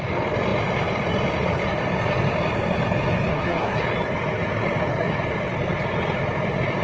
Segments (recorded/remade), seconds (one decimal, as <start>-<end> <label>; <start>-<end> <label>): 0.0-3.3 recorded; 3.3-3.8 remade; 3.8-6.8 recorded

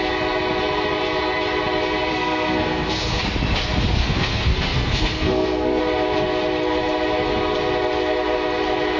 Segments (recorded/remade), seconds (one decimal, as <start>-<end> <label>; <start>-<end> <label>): 0.0-2.1 recorded; 2.1-3.2 remade; 3.2-4.0 recorded; 4.0-5.8 remade; 5.8-9.0 recorded

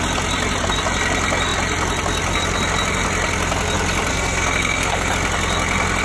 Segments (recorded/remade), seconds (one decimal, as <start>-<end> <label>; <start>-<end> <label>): 0.0-4.1 recorded; 4.1-5.1 remade; 5.1-6.0 recorded

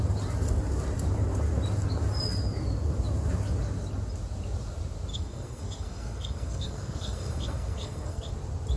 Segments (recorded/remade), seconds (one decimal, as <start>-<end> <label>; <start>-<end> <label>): 0.0-5.1 recorded; 5.1-8.3 remade; 8.3-8.8 recorded

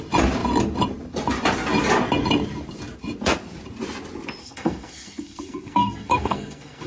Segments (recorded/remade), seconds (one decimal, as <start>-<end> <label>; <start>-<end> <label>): 0.0-4.4 recorded; 4.4-6.9 remade